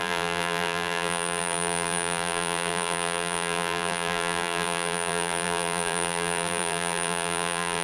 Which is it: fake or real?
fake